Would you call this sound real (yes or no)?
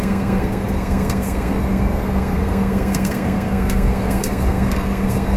no